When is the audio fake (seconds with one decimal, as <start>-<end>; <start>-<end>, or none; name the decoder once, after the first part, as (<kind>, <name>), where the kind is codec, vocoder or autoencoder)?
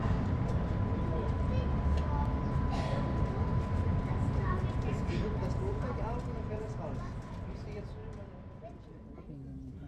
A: none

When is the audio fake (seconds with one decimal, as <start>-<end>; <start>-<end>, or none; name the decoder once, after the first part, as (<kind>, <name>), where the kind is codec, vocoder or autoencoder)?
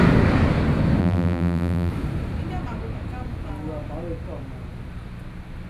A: 1.0-1.9 (vocoder, BigVGAN v2)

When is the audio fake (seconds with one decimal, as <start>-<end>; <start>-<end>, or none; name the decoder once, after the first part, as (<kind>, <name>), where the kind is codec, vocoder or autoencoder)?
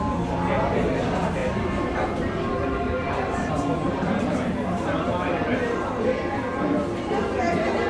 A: 1.4-5.9 (vocoder, BigVGAN v2)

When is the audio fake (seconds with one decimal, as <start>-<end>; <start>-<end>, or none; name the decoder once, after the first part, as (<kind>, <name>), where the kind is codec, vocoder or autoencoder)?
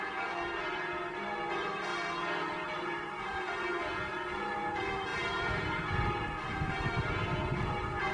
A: 0.0-8.1 (vocoder, BigVGAN v2)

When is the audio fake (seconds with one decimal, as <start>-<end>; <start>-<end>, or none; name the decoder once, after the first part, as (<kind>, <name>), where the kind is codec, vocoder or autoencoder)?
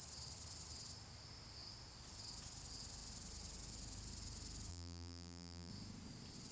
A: 4.7-5.7 (vocoder, BigVGAN v2)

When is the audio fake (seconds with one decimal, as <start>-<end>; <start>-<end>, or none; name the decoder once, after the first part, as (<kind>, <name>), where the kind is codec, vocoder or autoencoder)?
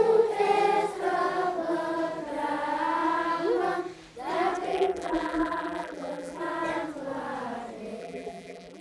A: 4.7-6.4 (vocoder, BigVGAN v2); 8.0-8.8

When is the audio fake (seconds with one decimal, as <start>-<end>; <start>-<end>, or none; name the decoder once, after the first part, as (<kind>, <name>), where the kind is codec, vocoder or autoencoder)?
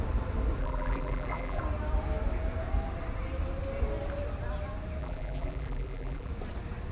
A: 0.6-1.6 (vocoder, BigVGAN v2); 5.0-6.3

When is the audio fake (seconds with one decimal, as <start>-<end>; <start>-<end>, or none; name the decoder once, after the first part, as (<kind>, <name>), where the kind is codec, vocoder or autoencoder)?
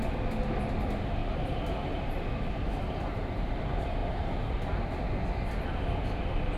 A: 1.2-3.6 (vocoder, BigVGAN v2); 4.0-5.1